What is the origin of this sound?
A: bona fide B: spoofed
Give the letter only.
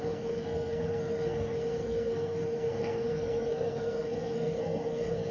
B